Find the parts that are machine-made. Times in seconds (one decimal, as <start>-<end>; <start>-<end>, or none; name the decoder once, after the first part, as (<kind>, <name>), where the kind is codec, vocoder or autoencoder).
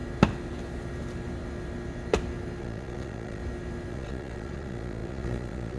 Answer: 2.6-3.4 (vocoder, Vocos); 3.9-5.8